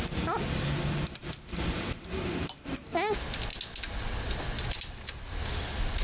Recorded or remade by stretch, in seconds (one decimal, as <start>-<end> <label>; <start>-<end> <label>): 0.0-6.0 recorded